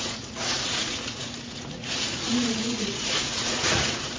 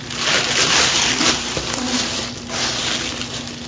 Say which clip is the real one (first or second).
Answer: second